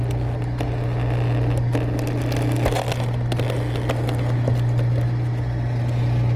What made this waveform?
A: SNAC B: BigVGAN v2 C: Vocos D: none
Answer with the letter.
D